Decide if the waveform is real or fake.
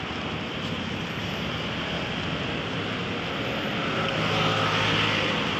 real